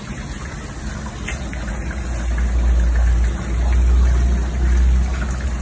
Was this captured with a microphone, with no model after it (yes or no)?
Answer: yes